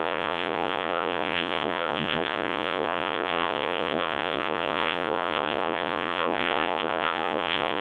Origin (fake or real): fake